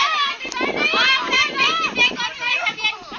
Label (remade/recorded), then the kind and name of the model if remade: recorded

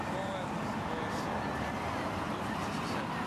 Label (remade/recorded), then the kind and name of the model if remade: recorded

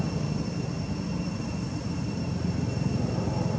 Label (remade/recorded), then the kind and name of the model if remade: recorded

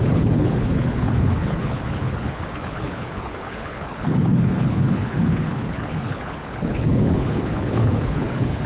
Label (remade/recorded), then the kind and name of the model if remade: remade, codec, HILCodec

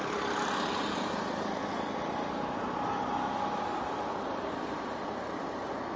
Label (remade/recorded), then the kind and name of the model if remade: recorded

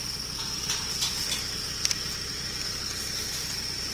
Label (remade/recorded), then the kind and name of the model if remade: recorded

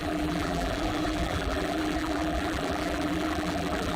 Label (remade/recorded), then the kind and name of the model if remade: remade, vocoder, BigVGAN v2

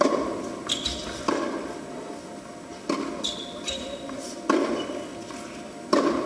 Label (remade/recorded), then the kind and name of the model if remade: recorded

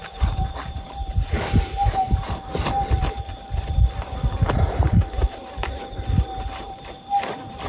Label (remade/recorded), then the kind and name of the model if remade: remade, vocoder, BigVGAN v2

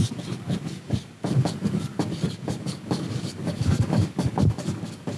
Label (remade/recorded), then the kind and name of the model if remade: remade, codec, DAC